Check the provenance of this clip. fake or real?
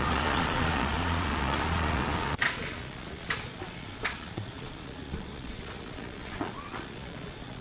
fake